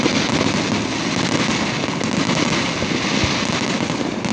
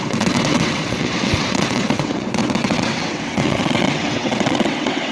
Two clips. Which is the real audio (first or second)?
first